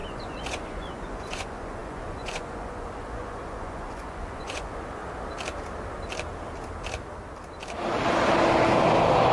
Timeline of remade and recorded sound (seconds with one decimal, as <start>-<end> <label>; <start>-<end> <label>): 0.0-5.0 remade; 5.0-9.3 recorded